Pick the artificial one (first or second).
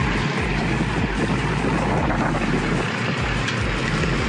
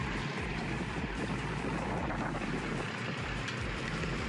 second